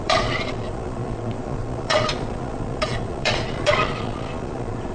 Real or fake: fake